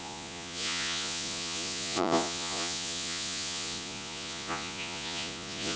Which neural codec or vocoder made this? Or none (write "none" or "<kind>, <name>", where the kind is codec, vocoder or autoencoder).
vocoder, Vocos